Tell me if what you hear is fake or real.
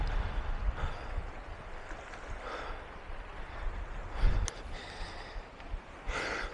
real